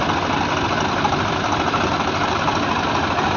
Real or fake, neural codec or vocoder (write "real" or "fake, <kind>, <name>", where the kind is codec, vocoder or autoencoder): real